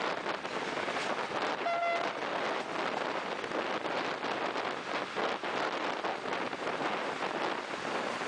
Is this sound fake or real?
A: real